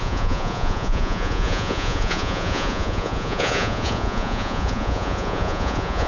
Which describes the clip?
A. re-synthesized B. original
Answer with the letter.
A